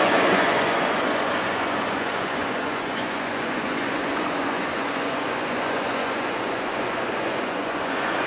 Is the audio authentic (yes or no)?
no